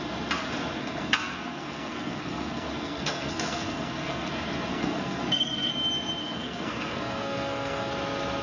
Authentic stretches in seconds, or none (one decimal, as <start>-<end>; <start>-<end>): 0.0-0.8; 4.3-4.7; 5.7-6.2; 7.9-8.4